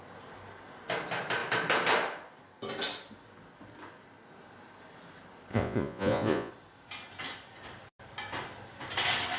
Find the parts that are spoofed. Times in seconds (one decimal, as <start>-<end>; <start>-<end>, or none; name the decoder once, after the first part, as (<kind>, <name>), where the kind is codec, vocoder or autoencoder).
5.5-6.5 (vocoder, Vocos)